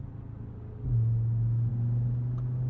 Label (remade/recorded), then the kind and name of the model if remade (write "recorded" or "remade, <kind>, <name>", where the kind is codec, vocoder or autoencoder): recorded